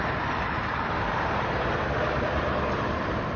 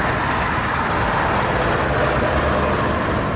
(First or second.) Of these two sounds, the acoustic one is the second